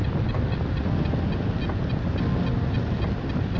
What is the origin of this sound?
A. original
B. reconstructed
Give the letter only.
A